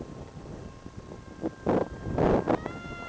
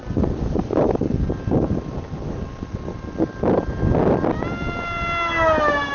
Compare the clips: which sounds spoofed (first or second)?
first